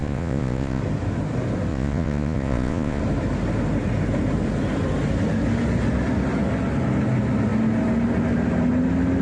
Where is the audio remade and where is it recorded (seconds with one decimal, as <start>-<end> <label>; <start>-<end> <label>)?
0.0-0.8 remade; 0.8-1.7 recorded; 1.7-3.0 remade; 3.0-9.2 recorded